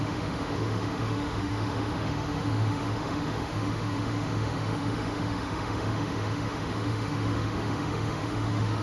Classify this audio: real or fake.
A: fake